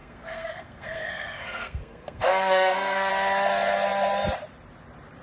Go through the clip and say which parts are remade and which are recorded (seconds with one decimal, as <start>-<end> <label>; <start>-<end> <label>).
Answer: 0.0-3.1 remade; 3.1-5.2 recorded